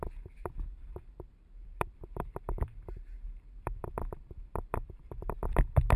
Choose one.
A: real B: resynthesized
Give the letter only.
B